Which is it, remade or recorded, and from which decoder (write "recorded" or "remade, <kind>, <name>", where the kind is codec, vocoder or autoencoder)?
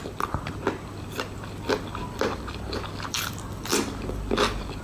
recorded